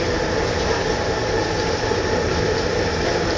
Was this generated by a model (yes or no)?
yes